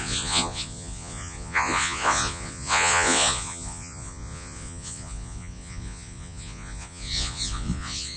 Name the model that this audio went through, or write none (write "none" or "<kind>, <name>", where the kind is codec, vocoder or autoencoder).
vocoder, Vocos